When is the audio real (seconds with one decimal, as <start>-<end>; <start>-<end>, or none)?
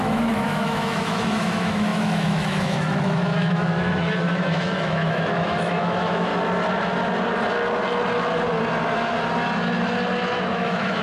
6.3-10.4